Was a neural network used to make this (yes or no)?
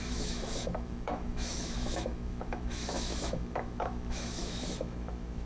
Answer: yes